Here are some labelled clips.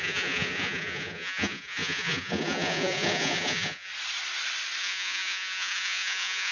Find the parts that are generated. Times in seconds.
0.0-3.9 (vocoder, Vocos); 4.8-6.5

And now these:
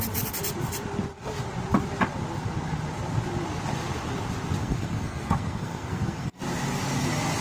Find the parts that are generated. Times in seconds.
4.6-6.4 (codec, SNAC)

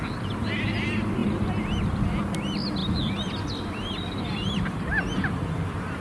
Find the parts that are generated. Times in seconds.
1.2-2.2 (vocoder, BigVGAN v2); 2.8-6.0

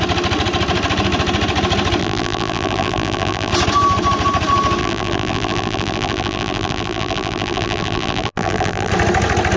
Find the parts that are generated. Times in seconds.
2.0-3.5 (vocoder, BigVGAN v2); 4.8-8.9